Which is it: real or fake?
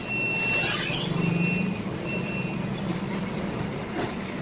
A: real